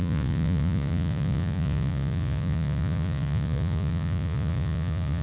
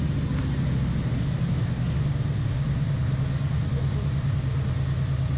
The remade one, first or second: first